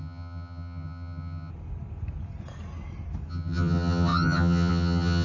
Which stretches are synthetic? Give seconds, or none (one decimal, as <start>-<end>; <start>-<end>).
0.0-1.5; 3.3-5.2

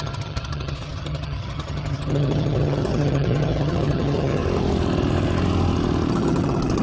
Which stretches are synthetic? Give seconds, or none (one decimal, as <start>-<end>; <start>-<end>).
0.0-4.4; 6.1-6.8

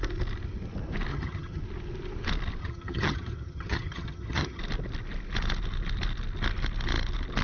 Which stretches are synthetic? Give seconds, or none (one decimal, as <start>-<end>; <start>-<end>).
1.1-1.6; 2.6-4.6

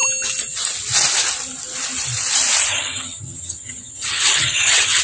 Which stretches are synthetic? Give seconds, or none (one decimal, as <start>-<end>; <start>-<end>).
2.7-5.0

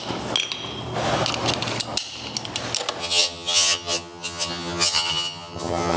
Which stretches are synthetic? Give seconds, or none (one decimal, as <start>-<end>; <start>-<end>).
3.0-6.0